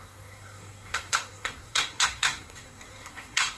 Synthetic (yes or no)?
yes